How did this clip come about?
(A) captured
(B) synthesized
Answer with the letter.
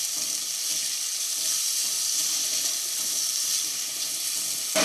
A